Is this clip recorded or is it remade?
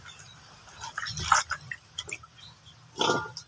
recorded